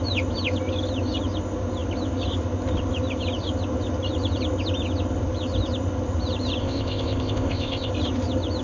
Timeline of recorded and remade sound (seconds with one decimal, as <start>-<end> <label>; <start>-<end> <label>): 0.0-6.6 recorded; 6.6-7.9 remade; 7.9-8.6 recorded